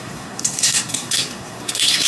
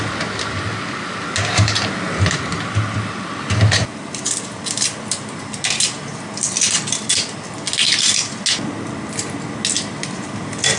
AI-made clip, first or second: first